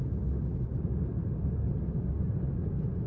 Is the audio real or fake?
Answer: real